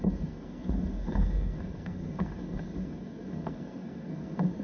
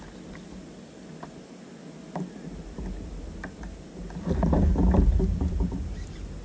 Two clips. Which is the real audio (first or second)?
second